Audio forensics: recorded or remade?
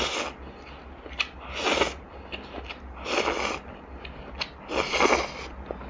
recorded